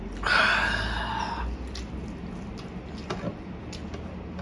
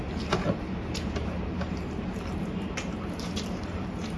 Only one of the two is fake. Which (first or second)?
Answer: second